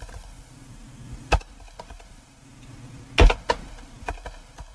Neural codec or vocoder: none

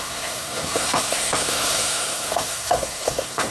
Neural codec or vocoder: codec, SNAC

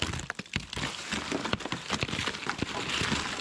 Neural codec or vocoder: none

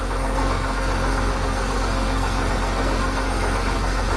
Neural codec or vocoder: codec, SNAC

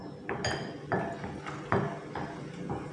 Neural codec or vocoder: none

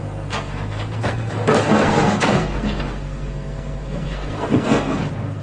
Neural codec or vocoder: codec, SNAC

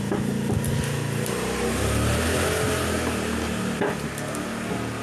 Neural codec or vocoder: none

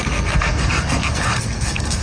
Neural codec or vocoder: codec, SNAC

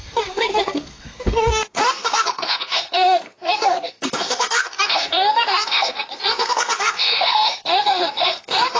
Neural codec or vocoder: codec, SNAC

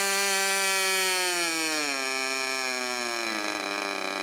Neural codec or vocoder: none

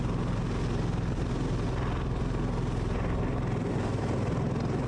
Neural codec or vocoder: none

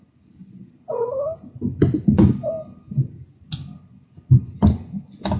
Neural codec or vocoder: none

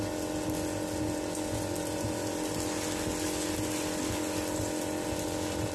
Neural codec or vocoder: none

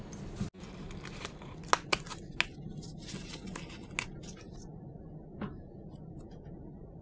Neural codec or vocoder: none